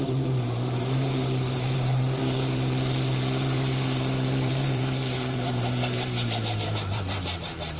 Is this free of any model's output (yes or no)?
no